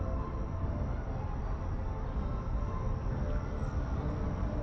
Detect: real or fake real